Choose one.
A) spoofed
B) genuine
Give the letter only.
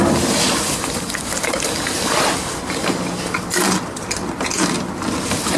B